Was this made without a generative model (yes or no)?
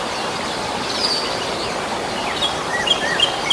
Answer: no